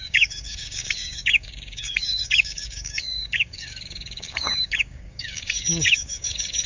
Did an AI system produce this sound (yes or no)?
yes